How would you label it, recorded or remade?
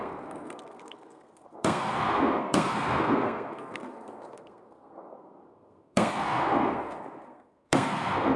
remade